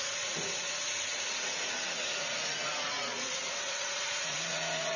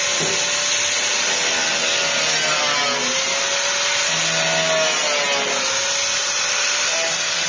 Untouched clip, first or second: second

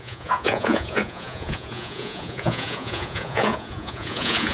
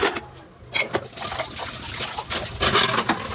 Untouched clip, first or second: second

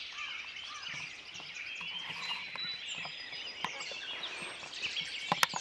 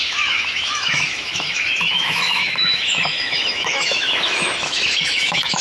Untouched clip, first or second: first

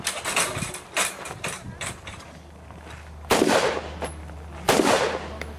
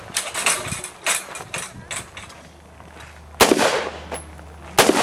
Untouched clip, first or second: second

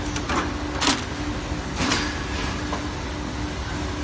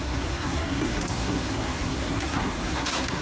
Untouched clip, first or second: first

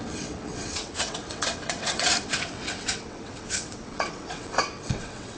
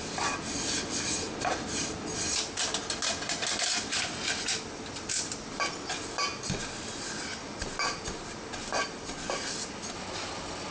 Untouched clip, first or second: second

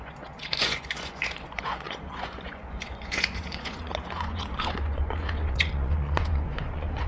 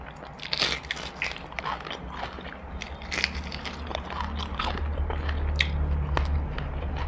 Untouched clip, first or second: second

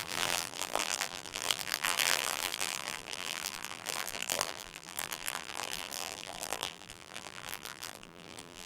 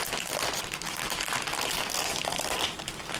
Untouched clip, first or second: second